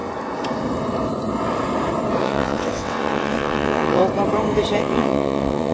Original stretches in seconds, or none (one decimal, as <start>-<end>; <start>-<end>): 0.0-2.2; 4.0-4.8